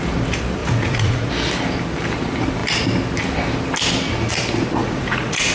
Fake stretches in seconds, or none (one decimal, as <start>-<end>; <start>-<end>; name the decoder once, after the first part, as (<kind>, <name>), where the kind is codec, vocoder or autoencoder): 0.6-1.3 (vocoder, Vocos); 4.8-5.5